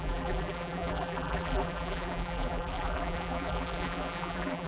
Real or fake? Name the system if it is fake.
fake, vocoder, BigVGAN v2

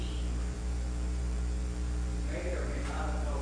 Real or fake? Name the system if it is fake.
fake, vocoder, BigVGAN v2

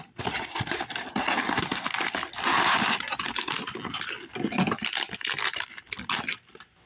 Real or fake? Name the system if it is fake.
real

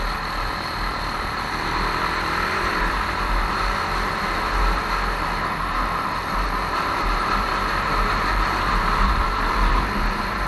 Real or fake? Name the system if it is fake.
fake, vocoder, BigVGAN v2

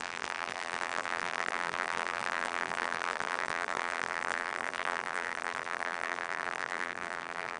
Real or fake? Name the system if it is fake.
fake, vocoder, BigVGAN v2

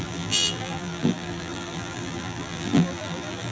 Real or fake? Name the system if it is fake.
fake, vocoder, BigVGAN v2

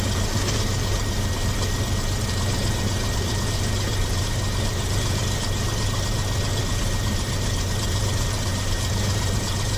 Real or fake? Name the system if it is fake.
fake, vocoder, BigVGAN v2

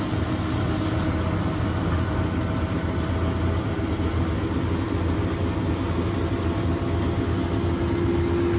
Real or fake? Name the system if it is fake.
real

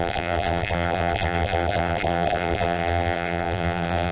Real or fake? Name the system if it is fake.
fake, vocoder, BigVGAN v2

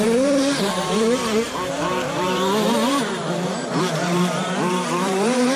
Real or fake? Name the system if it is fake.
fake, vocoder, BigVGAN v2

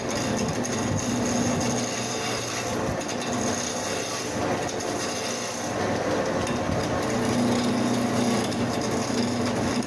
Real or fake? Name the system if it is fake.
real